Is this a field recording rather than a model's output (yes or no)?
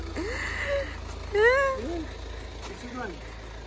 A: yes